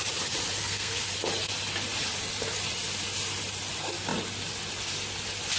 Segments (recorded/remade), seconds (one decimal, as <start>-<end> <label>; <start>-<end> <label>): 0.0-0.6 recorded; 0.6-1.1 remade; 1.1-5.6 recorded